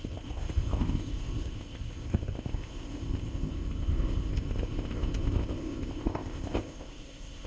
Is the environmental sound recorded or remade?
remade